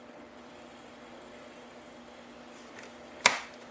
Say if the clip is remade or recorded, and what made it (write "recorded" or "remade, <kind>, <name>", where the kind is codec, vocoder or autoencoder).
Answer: recorded